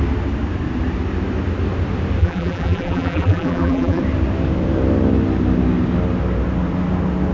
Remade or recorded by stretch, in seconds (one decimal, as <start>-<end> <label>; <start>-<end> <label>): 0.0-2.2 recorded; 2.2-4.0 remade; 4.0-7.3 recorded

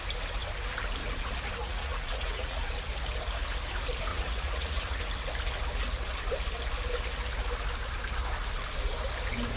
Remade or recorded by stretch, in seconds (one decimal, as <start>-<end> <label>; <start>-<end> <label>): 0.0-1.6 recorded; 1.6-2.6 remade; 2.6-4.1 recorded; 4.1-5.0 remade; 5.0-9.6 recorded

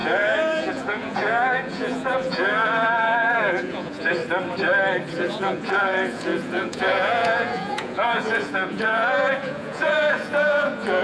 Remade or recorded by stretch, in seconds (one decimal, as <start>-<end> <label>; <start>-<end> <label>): 0.0-4.2 remade; 4.2-5.1 recorded; 5.1-11.0 remade